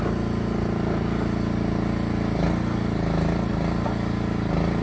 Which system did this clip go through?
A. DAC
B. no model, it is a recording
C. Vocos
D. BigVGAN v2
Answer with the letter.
B